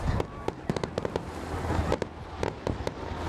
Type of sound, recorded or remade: recorded